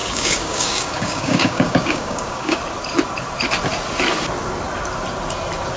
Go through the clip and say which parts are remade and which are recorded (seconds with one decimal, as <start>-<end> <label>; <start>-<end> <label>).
0.0-2.6 remade; 2.6-5.8 recorded

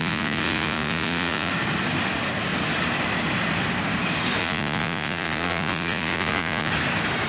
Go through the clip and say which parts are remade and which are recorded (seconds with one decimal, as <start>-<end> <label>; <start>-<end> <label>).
0.0-1.5 remade; 1.5-4.4 recorded; 4.4-6.7 remade; 6.7-7.3 recorded

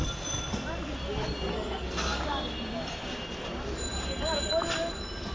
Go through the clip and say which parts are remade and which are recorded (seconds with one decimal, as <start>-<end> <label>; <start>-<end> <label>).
0.0-1.5 recorded; 1.5-2.2 remade; 2.2-5.3 recorded